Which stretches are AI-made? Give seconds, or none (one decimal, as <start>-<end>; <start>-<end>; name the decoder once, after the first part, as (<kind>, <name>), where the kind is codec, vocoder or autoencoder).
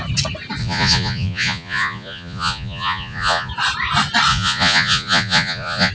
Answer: 0.6-3.5 (vocoder, Vocos); 4.3-5.9